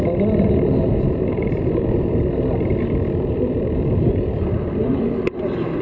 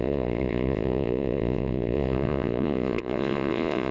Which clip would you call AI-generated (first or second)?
second